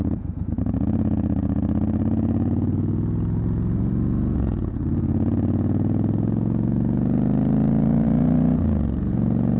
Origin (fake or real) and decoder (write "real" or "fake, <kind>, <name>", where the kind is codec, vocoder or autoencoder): fake, vocoder, Vocos